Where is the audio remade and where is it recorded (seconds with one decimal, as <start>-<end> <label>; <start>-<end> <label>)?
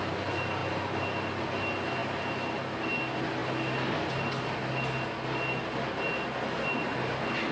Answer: 0.0-7.5 recorded